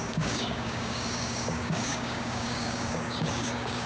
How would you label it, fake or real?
fake